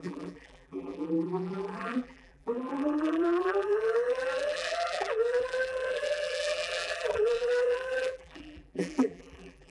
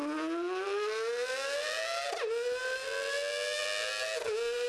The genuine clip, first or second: second